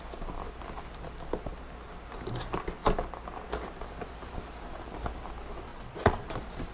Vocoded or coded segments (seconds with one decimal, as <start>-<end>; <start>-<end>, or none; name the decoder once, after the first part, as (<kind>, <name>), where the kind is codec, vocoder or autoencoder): 5.7-6.3 (vocoder, Vocos)